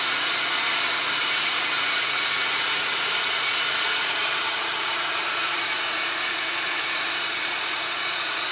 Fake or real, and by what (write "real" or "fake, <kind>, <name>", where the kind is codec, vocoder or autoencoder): fake, vocoder, Vocos